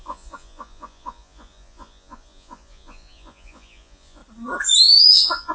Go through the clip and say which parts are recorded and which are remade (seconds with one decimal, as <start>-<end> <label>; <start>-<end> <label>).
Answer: 0.0-4.2 remade; 4.2-5.0 recorded; 5.0-5.5 remade